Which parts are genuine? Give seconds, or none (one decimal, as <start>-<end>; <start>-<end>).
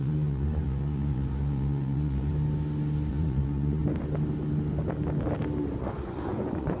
2.3-3.1; 3.8-5.8